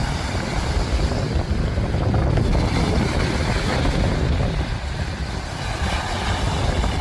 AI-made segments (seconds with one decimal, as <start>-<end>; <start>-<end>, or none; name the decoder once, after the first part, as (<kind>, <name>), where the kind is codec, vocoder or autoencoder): none